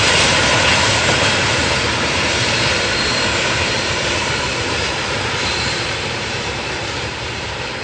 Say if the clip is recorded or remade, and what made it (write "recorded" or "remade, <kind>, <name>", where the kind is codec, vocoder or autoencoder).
remade, vocoder, BigVGAN v2